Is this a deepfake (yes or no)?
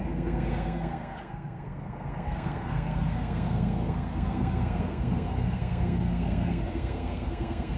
yes